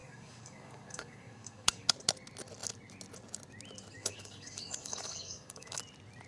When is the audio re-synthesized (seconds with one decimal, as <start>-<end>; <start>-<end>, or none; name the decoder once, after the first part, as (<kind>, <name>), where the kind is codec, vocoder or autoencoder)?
0.0-1.9 (codec, DAC); 4.0-5.8